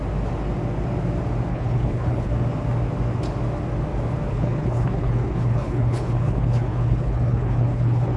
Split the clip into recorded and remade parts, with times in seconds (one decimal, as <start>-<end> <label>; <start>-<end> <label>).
0.0-1.5 recorded; 1.5-2.3 remade; 2.3-4.3 recorded; 4.3-8.2 remade